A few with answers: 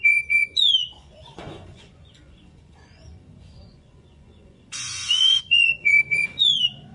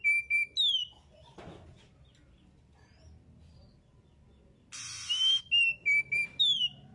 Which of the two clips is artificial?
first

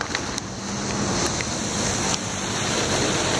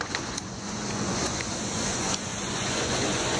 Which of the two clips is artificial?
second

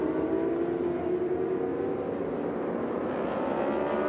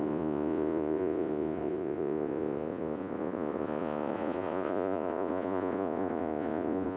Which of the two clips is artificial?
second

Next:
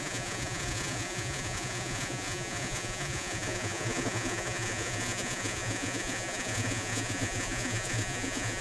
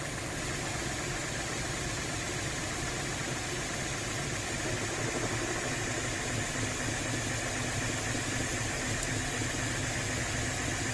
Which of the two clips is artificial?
first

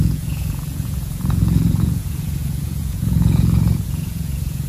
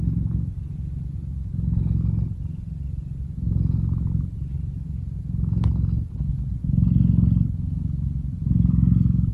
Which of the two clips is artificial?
first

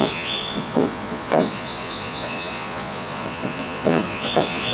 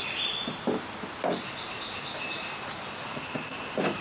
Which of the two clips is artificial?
first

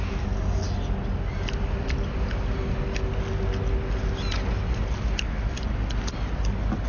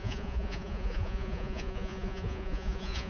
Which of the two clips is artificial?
second